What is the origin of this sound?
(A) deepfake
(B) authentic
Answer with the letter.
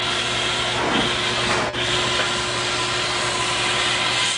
B